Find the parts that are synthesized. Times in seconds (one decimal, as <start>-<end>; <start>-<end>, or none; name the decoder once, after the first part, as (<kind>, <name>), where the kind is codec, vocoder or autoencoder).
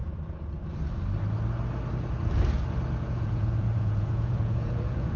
3.1-5.2 (vocoder, Vocos)